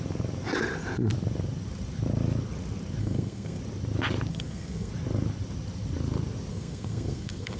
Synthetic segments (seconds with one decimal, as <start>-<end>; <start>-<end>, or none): 3.0-3.6; 4.3-4.9; 6.5-7.6